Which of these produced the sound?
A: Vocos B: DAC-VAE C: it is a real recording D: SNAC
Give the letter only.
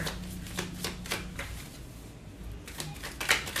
C